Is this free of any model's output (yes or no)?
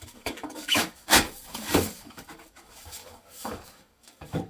no